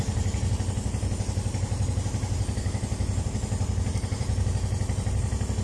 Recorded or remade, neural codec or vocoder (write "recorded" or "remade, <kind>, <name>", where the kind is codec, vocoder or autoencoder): recorded